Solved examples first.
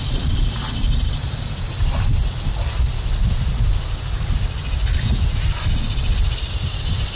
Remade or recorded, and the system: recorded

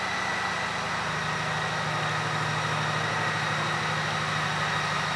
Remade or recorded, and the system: recorded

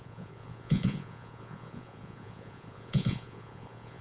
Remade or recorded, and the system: remade, vocoder, Vocos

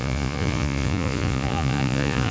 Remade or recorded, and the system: remade, vocoder, Vocos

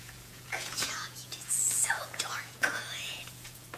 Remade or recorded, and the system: remade, vocoder, Vocos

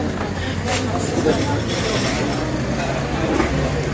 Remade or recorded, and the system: recorded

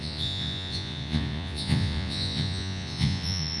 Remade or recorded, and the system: remade, vocoder, Vocos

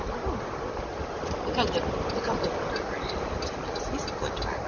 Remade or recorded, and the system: recorded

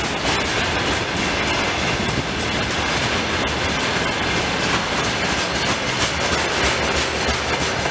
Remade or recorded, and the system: recorded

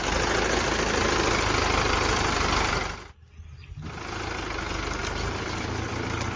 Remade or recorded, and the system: recorded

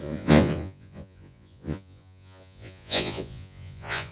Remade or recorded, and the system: remade, vocoder, Vocos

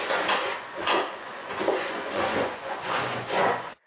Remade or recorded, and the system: remade, vocoder, Vocos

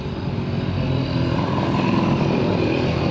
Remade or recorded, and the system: recorded